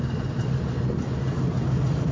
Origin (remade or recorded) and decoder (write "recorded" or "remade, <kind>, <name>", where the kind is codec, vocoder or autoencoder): recorded